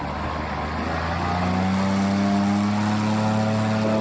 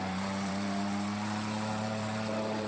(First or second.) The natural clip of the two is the first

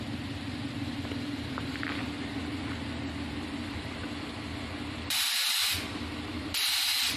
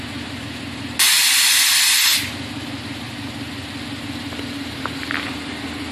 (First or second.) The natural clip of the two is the second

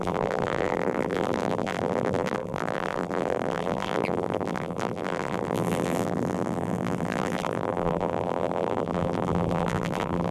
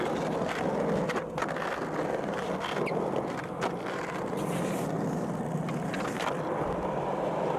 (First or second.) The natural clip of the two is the second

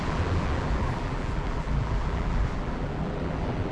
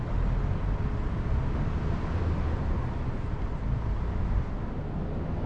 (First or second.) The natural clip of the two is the second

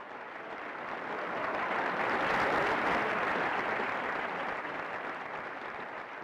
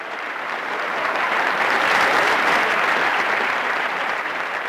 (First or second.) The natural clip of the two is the first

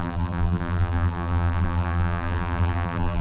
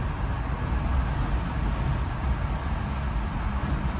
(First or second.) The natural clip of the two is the second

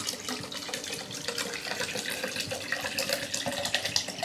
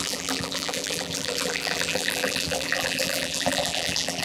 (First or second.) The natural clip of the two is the first